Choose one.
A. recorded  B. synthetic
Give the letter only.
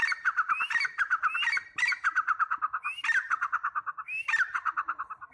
A